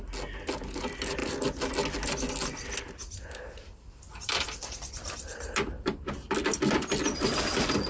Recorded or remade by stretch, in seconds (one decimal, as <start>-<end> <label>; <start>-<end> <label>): 0.0-4.1 recorded; 4.1-5.9 remade; 5.9-7.9 recorded